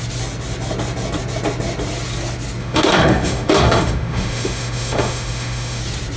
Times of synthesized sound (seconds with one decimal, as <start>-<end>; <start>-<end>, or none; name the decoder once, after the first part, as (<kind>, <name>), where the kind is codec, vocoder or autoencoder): 2.6-5.8 (autoencoder, DAC-VAE)